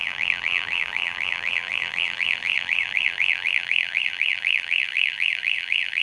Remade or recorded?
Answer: remade